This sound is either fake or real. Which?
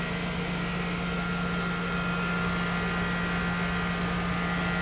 real